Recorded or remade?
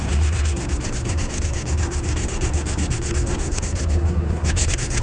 remade